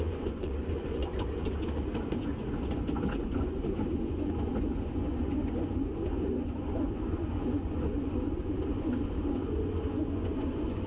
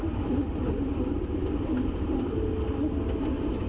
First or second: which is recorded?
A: second